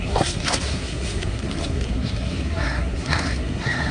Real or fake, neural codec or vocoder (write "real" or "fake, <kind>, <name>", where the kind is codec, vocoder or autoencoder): fake, codec, SNAC